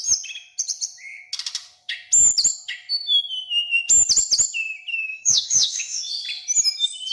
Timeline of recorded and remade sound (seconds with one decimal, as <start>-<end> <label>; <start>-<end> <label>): 0.0-4.9 recorded; 4.9-6.0 remade; 6.0-7.1 recorded